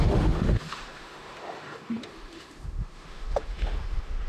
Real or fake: fake